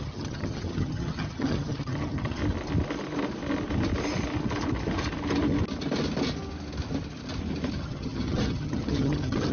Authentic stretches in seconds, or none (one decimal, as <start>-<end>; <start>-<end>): 2.4-7.7